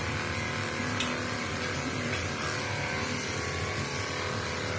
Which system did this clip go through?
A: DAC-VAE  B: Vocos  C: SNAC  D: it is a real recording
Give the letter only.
D